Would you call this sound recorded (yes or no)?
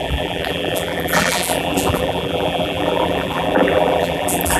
no